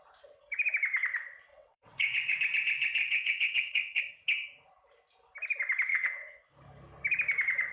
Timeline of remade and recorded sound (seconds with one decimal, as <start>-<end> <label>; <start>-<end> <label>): 0.0-1.5 recorded; 1.5-2.4 remade; 2.4-3.0 recorded; 3.0-4.0 remade; 4.0-5.9 recorded; 5.9-6.4 remade; 6.4-7.7 recorded